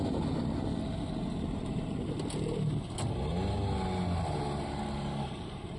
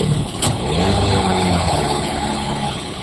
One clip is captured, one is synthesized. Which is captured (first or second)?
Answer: first